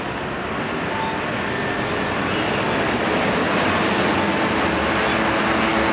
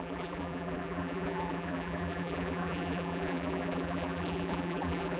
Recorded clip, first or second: first